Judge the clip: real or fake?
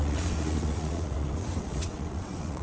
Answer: fake